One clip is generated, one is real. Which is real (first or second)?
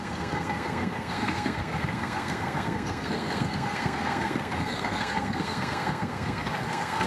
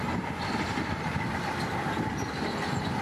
second